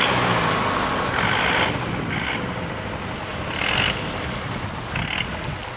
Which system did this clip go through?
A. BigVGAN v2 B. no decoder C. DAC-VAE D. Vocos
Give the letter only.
B